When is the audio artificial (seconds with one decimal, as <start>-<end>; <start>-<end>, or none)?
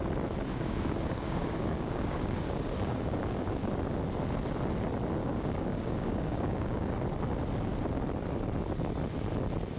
0.5-3.7; 5.2-6.9